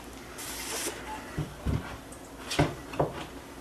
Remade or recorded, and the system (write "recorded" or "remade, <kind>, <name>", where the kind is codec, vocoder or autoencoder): recorded